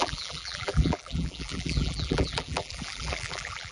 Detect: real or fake fake